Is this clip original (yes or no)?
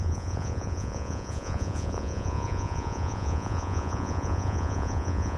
no